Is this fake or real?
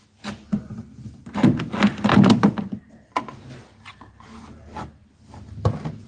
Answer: real